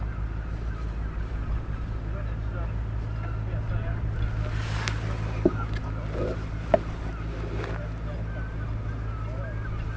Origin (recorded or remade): recorded